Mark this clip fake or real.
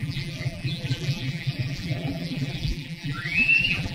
fake